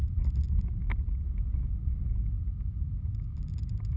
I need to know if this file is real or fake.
real